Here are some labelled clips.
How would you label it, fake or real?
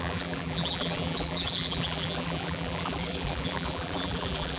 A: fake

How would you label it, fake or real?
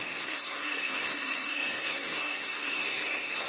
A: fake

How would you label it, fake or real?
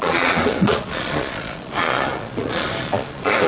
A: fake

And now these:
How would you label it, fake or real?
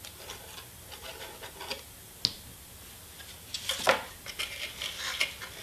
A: real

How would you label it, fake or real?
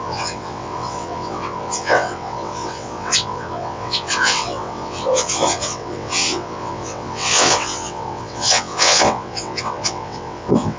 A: fake